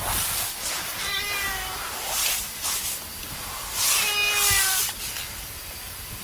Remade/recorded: recorded